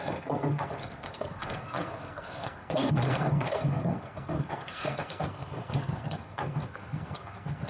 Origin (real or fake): fake